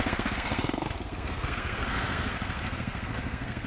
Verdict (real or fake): fake